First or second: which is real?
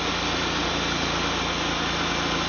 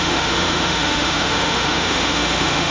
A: first